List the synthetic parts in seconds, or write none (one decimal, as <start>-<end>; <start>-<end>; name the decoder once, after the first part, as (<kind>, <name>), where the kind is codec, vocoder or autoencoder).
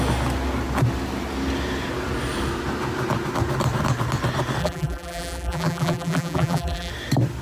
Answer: 4.6-6.9 (vocoder, BigVGAN v2)